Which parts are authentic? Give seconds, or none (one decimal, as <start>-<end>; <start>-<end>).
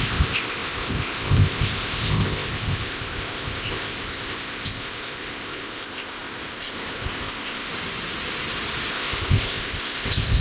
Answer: 7.7-8.9